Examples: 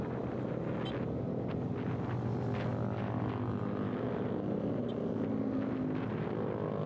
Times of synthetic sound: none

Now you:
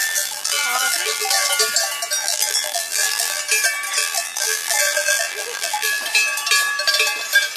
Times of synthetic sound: 0.0-1.5 (vocoder, BigVGAN v2); 2.2-3.4; 4.0-6.0

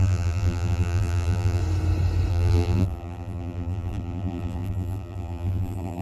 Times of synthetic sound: 0.0-1.6 (vocoder, BigVGAN v2); 2.3-6.0

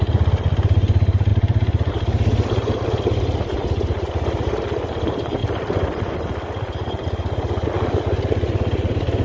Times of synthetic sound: 1.3-1.9 (vocoder, BigVGAN v2); 5.4-6.1

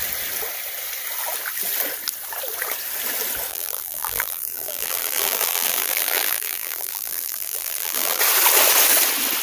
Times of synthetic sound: 3.5-8.2 (vocoder, BigVGAN v2)

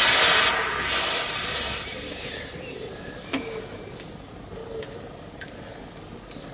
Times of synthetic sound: 1.9-3.6 (vocoder, BigVGAN v2)